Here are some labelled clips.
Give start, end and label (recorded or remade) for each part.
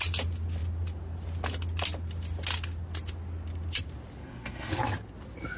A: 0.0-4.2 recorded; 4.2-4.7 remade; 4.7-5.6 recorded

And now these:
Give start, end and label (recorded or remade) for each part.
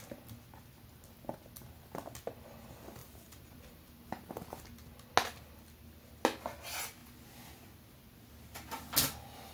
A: 0.0-3.0 recorded; 3.0-4.3 remade; 4.3-9.5 recorded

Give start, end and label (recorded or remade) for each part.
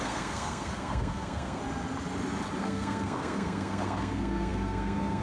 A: 0.0-1.6 remade; 1.6-2.6 recorded; 2.6-5.2 remade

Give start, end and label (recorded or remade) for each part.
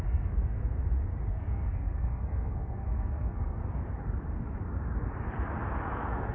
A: 0.0-0.6 remade; 0.6-1.3 recorded; 1.3-3.6 remade; 3.6-6.3 recorded